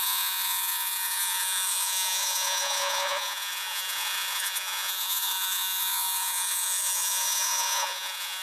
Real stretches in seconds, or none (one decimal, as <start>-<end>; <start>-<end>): none